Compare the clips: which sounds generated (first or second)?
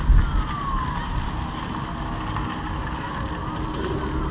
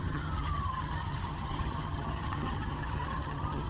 second